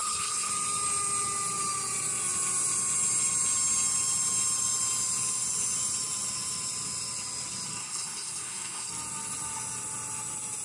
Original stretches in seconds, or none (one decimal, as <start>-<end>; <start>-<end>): 0.5-7.8; 8.9-10.6